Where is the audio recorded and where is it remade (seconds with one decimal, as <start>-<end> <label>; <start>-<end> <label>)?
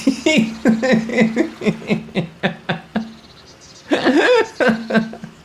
0.0-4.8 recorded; 4.8-5.4 remade